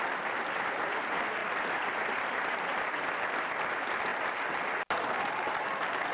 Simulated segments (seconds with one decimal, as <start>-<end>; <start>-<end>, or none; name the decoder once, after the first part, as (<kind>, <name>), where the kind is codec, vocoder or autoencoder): none